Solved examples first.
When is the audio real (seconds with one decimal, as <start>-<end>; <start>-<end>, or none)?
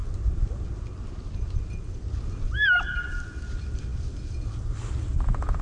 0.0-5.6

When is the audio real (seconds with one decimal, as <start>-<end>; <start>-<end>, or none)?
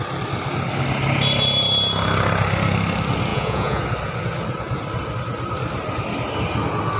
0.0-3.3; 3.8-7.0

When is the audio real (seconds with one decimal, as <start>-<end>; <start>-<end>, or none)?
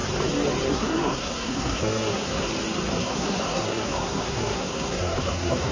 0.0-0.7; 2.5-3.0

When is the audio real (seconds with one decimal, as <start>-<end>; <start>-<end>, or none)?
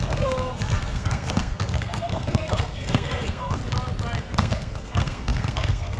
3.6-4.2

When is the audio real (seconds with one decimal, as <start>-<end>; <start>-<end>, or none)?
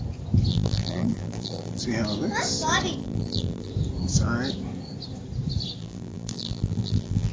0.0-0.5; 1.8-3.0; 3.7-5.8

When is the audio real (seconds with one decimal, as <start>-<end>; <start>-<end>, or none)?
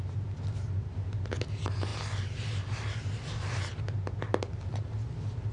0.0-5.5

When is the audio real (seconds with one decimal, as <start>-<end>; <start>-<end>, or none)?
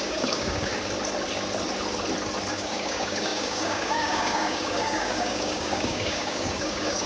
0.7-2.5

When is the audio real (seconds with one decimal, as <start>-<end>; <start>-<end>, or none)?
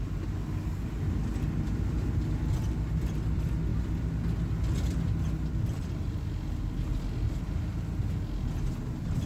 0.0-9.3